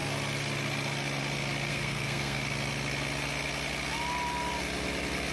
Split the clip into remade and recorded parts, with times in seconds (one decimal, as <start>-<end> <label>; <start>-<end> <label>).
0.0-1.7 recorded; 1.7-2.4 remade; 2.4-5.3 recorded